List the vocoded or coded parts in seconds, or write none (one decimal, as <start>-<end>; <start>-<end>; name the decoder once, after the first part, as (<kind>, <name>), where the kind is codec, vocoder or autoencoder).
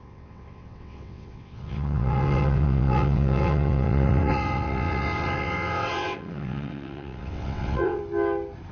0.0-8.0 (vocoder, WaveNeXt)